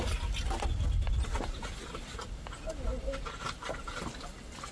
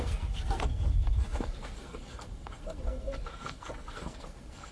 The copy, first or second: second